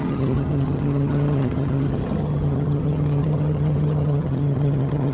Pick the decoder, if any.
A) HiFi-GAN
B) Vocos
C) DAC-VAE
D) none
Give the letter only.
A